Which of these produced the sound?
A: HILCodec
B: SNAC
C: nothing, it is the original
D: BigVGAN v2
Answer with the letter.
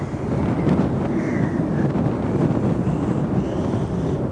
C